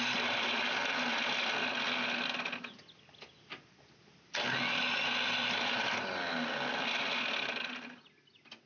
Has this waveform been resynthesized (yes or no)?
no